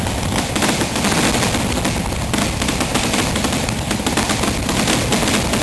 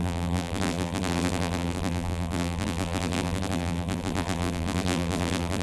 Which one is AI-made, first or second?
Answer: second